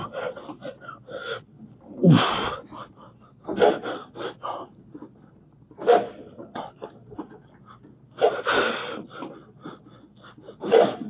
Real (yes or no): yes